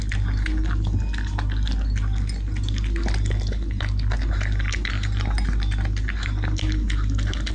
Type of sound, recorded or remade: recorded